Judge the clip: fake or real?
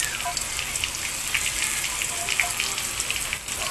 real